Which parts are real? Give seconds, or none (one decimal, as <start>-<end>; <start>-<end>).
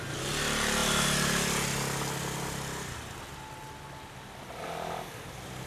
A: 0.0-5.7